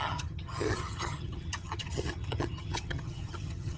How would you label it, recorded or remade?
remade